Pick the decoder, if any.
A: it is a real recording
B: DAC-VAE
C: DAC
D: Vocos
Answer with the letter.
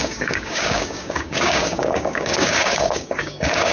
C